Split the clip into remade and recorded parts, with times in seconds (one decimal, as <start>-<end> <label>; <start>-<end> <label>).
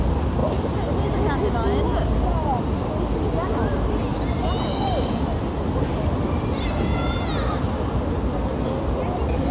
0.0-9.5 recorded